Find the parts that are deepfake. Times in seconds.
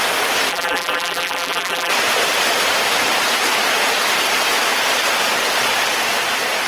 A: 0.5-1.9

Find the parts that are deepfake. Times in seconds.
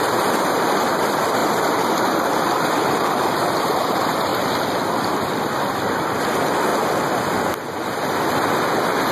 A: 0.0-4.3; 5.0-6.7; 7.8-9.1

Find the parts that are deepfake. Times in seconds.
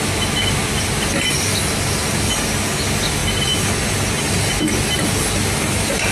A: none